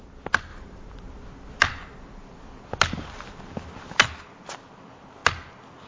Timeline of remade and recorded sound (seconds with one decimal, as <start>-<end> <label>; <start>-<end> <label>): 0.0-5.9 recorded